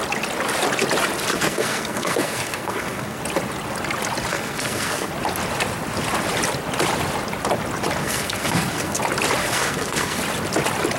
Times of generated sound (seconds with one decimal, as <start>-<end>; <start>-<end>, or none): 1.3-3.2; 4.3-5.1; 8.0-9.0; 9.4-10.2